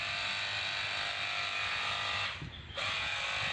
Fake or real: real